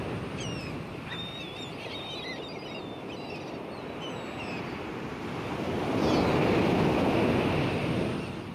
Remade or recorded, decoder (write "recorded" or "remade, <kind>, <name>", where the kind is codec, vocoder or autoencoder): recorded